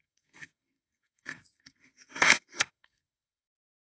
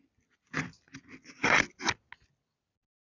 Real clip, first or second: second